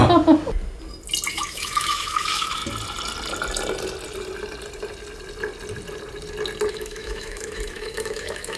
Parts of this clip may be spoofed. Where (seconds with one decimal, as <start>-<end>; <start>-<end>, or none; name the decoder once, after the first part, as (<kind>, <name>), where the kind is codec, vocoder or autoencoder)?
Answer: 1.3-2.6 (autoencoder, DAC-VAE); 6.7-8.6

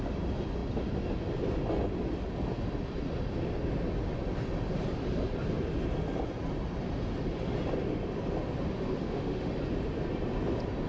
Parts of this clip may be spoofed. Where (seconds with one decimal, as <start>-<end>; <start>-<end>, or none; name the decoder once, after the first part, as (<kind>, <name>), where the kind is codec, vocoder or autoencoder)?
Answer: 9.0-9.5 (autoencoder, DAC-VAE)

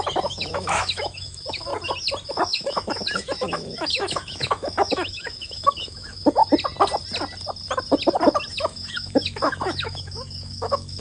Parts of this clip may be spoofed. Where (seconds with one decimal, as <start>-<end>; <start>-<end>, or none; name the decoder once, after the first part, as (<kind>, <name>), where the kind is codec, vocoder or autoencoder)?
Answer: 0.0-1.7 (autoencoder, DAC-VAE); 2.3-6.4; 8.5-11.0

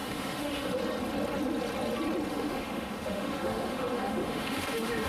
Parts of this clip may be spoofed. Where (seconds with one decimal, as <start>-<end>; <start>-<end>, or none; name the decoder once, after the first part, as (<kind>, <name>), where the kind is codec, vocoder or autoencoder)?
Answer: 0.0-0.8 (autoencoder, DAC-VAE); 2.3-5.1

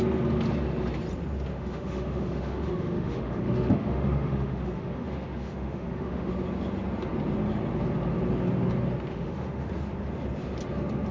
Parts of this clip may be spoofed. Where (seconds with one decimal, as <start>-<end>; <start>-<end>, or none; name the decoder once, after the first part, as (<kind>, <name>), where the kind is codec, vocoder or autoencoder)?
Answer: 1.5-6.3 (autoencoder, DAC-VAE); 9.1-9.7

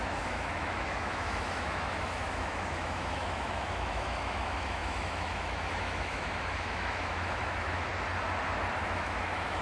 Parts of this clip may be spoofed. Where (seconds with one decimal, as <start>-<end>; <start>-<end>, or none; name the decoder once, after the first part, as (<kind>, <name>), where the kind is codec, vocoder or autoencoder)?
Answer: 0.0-7.9 (autoencoder, DAC-VAE); 8.8-9.6

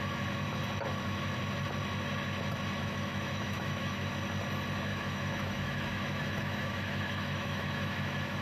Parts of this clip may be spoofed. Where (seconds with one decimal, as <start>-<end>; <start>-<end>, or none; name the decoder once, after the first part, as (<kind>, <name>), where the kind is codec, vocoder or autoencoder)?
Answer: 2.8-4.1 (autoencoder, DAC-VAE); 4.9-8.4